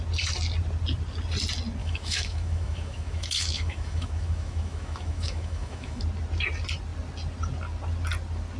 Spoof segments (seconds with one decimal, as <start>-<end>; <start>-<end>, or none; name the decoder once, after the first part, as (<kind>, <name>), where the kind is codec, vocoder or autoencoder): 1.8-6.0 (autoencoder, DAC-VAE)